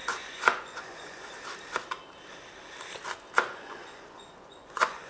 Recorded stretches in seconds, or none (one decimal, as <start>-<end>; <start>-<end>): 1.3-3.5